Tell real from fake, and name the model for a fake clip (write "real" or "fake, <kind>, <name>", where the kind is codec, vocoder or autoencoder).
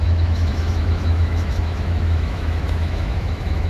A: fake, autoencoder, DAC-VAE